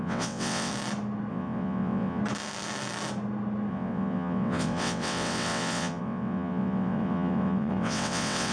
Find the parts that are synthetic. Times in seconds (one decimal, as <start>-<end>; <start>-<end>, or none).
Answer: 0.0-0.7; 1.3-2.2; 3.7-8.5